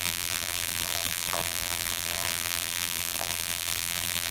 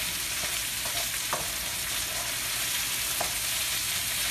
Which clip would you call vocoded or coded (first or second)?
first